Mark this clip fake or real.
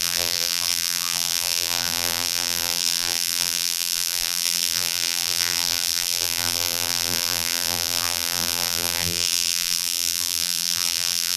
fake